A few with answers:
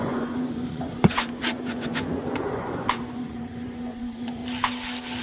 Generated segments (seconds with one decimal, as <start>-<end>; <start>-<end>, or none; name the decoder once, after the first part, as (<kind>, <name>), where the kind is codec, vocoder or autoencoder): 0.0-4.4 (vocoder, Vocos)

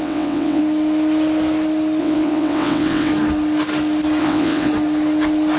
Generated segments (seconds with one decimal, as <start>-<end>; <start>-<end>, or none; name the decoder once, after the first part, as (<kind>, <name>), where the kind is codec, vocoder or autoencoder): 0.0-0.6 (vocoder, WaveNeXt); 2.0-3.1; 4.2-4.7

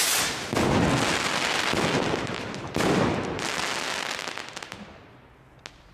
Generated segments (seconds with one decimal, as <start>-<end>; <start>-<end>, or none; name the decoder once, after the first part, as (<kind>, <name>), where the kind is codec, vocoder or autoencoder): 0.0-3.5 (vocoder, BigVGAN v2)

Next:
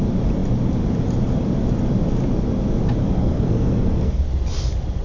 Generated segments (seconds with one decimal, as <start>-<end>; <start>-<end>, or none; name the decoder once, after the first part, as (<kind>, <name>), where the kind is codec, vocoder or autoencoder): 3.0-4.2 (codec, SNAC)

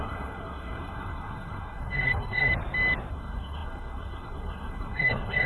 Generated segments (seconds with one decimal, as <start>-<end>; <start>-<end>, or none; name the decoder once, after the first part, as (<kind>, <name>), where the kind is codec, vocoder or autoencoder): 0.0-2.5 (codec, SNAC); 3.1-5.5

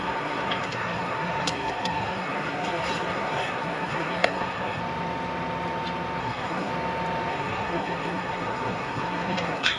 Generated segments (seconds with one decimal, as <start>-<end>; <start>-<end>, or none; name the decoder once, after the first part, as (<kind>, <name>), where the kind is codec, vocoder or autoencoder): 0.0-4.8 (codec, SNAC); 6.2-6.7; 7.3-9.8

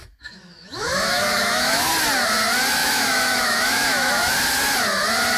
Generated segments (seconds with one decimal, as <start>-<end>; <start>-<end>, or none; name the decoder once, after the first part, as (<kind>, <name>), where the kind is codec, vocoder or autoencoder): 0.0-1.9 (autoencoder, DAC-VAE); 2.8-4.3